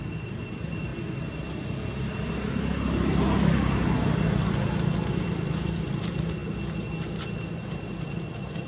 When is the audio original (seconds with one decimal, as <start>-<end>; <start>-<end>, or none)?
0.9-5.1; 6.4-7.9